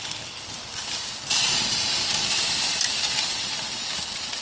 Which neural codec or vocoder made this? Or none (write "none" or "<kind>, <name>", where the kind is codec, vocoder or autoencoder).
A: none